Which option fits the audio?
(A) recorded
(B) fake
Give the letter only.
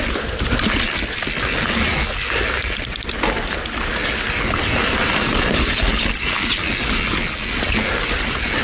A